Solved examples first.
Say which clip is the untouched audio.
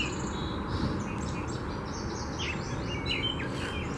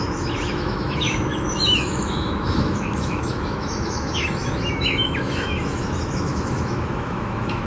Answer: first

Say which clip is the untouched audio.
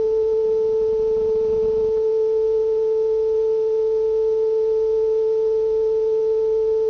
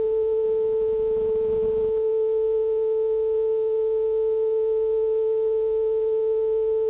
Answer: first